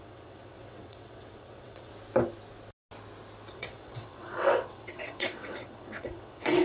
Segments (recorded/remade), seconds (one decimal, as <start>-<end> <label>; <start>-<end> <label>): 0.0-1.9 remade; 1.9-3.5 recorded; 3.5-6.6 remade